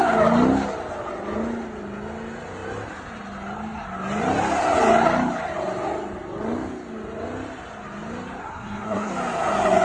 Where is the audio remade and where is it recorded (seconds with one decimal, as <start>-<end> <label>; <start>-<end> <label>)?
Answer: 0.0-8.4 recorded; 8.4-9.1 remade; 9.1-9.8 recorded